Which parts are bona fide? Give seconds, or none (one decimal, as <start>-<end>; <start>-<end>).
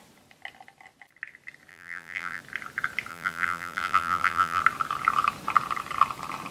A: 0.0-1.7; 2.4-3.1; 4.6-6.5